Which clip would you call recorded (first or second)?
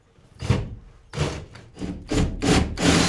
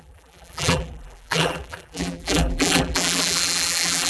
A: first